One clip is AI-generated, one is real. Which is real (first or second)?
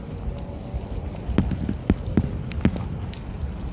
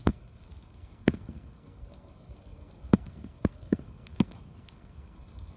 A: first